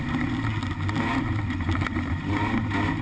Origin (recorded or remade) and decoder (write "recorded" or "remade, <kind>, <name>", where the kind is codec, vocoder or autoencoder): recorded